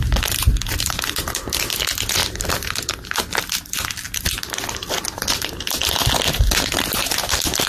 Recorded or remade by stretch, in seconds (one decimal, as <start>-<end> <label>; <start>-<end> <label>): 0.0-7.7 recorded